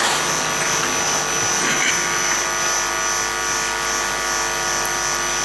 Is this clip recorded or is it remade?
recorded